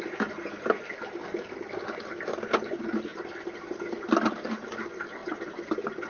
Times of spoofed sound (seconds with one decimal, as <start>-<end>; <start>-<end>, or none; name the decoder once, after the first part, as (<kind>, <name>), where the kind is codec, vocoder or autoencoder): none